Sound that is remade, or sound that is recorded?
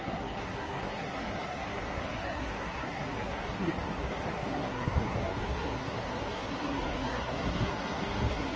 remade